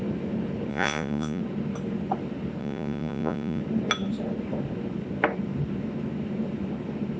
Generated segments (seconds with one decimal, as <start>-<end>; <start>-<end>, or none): 0.7-1.4; 2.6-3.6